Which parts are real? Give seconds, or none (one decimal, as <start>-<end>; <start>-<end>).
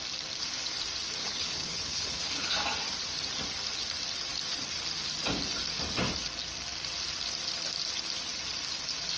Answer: 0.0-1.2; 2.5-9.2